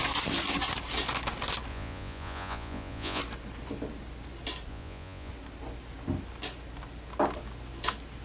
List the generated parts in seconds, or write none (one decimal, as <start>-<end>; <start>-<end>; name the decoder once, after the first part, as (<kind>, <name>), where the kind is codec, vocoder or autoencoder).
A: 1.7-3.2 (vocoder, Vocos); 4.7-5.3